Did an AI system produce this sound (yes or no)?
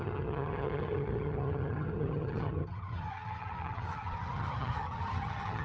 yes